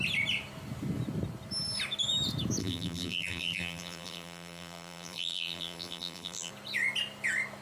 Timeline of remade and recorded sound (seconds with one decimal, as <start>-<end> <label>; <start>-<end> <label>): 0.0-2.6 recorded; 2.6-6.5 remade; 6.5-7.6 recorded